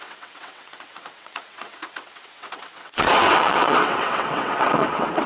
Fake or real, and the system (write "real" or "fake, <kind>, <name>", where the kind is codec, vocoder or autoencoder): fake, vocoder, WaveNeXt